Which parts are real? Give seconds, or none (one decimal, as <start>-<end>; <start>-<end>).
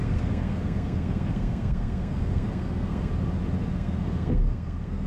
3.1-3.7